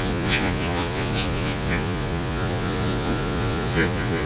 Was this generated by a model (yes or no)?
yes